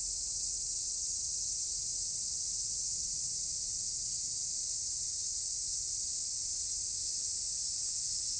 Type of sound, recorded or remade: recorded